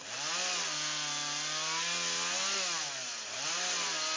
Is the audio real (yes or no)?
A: yes